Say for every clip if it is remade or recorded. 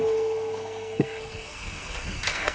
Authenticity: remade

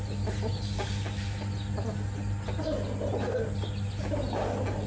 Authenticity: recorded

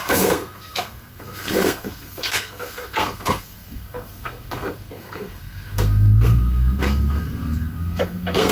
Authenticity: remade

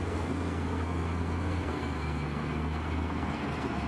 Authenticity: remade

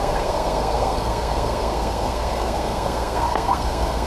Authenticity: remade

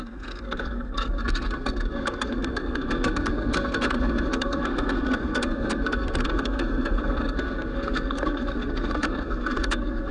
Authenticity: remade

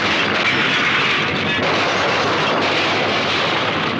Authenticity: recorded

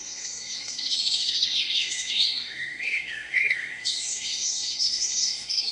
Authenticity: remade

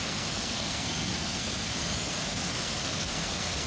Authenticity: remade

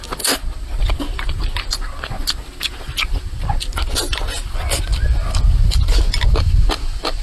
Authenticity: recorded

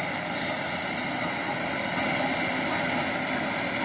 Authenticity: recorded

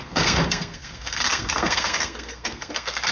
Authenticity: remade